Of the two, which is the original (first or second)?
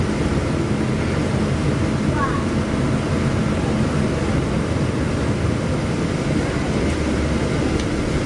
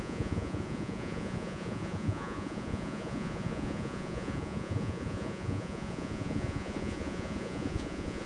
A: first